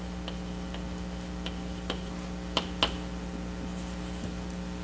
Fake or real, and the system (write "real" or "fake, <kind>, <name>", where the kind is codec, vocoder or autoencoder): real